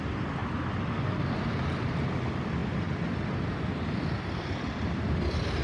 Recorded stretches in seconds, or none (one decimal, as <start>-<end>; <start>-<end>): 2.6-5.6

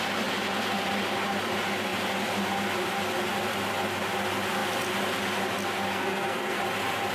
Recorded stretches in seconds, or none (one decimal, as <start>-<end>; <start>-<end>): 0.0-5.9; 6.6-7.1

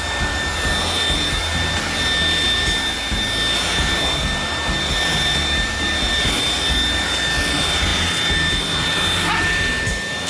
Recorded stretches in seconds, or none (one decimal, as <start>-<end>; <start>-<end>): 0.0-10.3

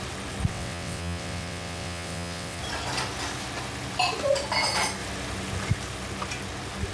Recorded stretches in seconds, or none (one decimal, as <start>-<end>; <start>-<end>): 0.0-0.5; 2.6-6.9

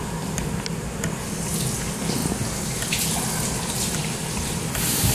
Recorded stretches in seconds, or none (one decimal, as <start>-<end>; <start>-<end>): 0.0-5.1